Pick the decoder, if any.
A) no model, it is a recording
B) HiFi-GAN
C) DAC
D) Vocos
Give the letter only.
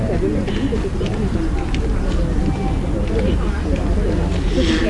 A